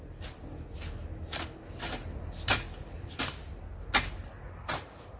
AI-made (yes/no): no